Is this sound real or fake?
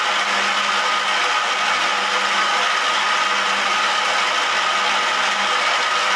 real